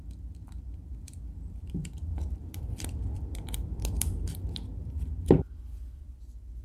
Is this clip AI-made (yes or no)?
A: yes